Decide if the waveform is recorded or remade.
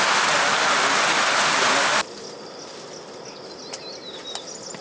recorded